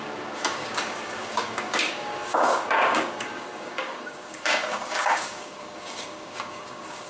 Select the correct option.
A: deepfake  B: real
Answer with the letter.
A